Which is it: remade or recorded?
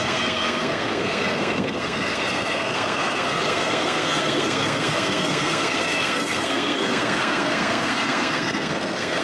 remade